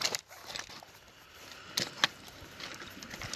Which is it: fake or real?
real